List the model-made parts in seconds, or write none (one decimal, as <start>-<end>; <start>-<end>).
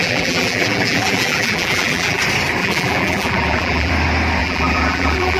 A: 0.0-2.2; 2.6-3.9; 4.4-5.4